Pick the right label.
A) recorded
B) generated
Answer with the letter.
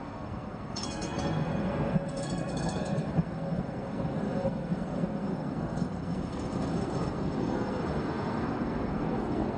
B